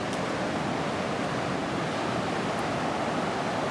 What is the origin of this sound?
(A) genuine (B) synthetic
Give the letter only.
A